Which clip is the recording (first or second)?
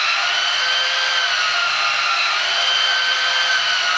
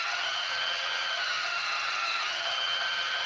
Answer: first